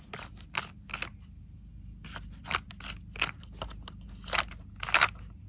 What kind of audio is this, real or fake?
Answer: real